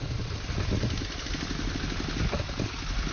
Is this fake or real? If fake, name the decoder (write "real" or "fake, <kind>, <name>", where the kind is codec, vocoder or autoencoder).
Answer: real